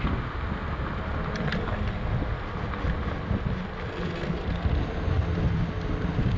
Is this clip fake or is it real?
real